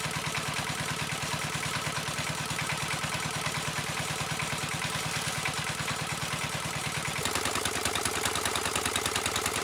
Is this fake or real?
real